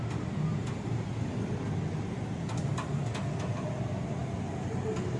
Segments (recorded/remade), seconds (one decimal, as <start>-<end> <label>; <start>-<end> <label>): 0.0-5.2 recorded